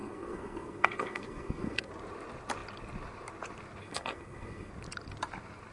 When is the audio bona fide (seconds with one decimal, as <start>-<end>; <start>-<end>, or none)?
1.9-3.8; 4.7-5.7